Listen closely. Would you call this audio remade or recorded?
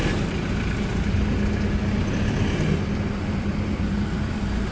recorded